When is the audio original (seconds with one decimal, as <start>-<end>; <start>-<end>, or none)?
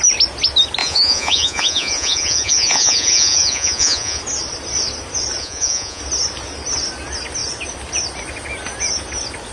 0.0-0.8; 4.2-5.4; 6.0-9.5